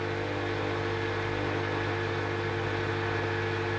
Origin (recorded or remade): recorded